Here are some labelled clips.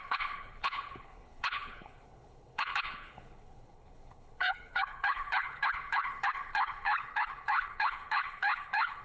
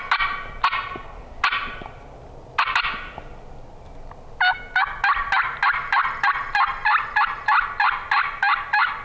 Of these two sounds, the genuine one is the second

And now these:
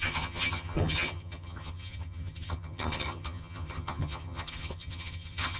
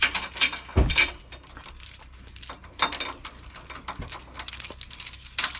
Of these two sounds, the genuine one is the second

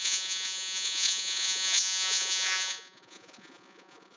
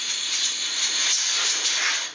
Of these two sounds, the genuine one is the second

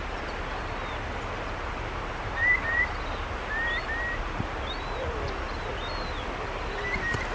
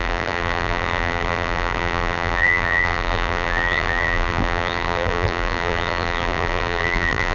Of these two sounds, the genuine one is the first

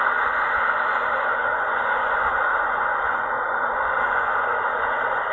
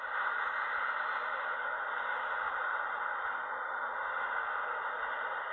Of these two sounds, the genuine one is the second